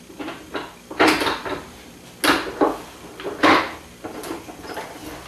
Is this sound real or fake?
real